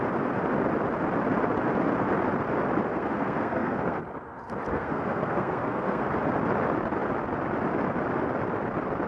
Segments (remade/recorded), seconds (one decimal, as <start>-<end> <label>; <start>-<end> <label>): 0.0-2.9 recorded; 2.9-4.0 remade; 4.0-4.7 recorded; 4.7-6.1 remade; 6.1-9.1 recorded